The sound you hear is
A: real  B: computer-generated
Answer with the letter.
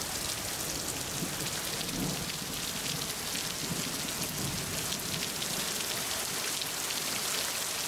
A